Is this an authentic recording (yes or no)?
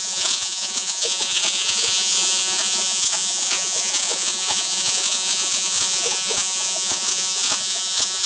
no